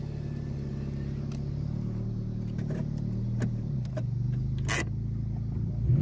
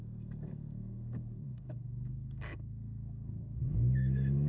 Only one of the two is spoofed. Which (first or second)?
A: second